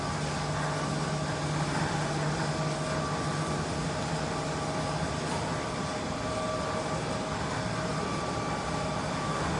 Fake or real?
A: real